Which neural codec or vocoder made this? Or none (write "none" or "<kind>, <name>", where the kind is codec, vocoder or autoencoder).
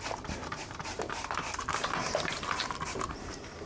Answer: vocoder, BigVGAN v2